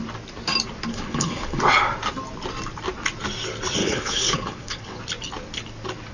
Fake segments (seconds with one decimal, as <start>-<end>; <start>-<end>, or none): 0.9-1.6; 3.8-5.0